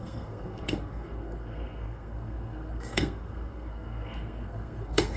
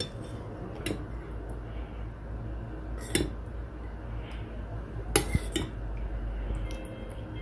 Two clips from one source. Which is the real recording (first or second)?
second